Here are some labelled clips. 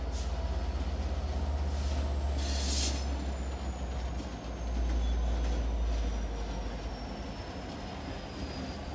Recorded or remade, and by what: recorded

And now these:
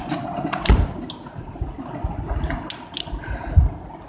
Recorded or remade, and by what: recorded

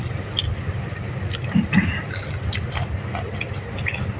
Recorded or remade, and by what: recorded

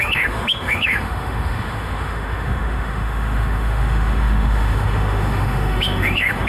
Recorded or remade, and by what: remade, autoencoder, DAC-VAE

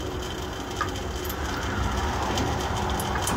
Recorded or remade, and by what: recorded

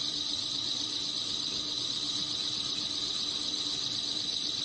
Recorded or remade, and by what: recorded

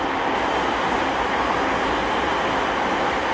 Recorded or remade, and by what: recorded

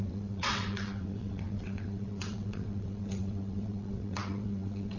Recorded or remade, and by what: remade, vocoder, WaveNeXt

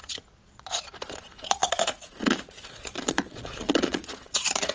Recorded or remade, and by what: remade, vocoder, Vocos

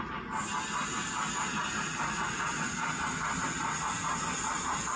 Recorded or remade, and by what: recorded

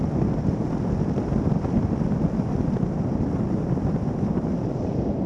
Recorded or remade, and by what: remade, vocoder, BigVGAN v2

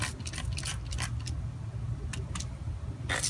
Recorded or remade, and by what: recorded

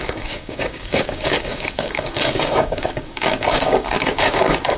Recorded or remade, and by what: remade, codec, DAC